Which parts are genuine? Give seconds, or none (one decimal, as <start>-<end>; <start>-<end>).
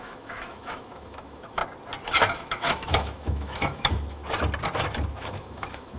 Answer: 1.6-2.3; 4.2-5.1